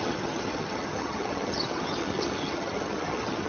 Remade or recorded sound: remade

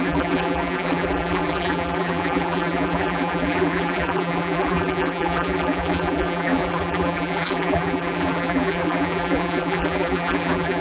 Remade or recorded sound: remade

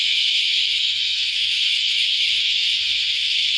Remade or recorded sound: remade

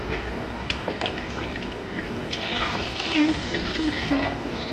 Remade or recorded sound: remade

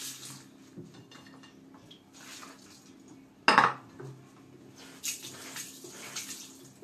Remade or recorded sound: recorded